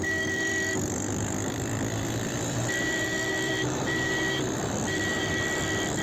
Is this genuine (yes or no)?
no